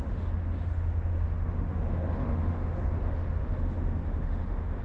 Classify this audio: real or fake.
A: fake